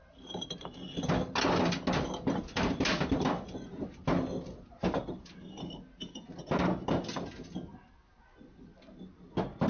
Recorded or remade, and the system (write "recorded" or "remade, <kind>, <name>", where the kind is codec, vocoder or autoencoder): recorded